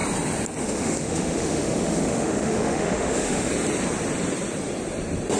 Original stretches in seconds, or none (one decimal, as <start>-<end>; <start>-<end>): 0.0-0.6; 3.5-5.4